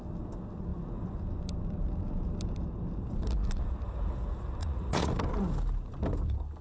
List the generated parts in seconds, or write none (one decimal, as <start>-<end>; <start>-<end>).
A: 4.6-5.1